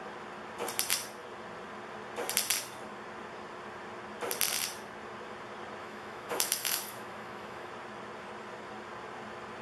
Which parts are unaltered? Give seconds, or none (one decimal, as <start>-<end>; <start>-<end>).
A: 0.0-5.8; 7.7-9.6